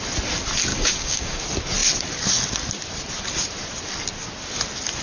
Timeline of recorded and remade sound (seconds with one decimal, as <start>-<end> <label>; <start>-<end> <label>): 0.0-0.7 recorded; 0.7-1.4 remade; 1.4-5.0 recorded